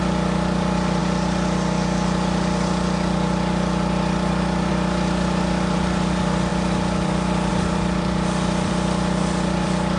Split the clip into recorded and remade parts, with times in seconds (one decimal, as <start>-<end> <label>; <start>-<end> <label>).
0.0-1.0 remade; 1.0-4.7 recorded; 4.7-6.5 remade; 6.5-7.5 recorded; 7.5-10.0 remade